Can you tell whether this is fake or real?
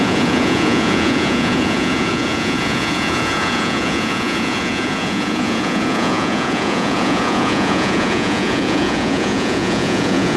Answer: fake